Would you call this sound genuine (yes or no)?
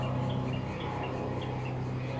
yes